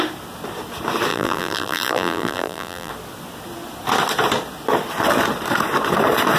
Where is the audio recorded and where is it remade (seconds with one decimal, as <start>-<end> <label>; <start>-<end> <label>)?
0.0-1.1 recorded; 1.1-2.9 remade; 2.9-6.4 recorded